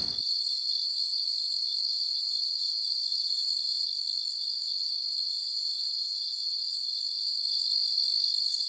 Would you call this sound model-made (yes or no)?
yes